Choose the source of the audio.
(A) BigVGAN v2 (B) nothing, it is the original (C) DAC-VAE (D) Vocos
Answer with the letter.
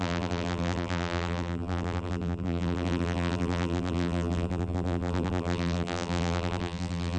A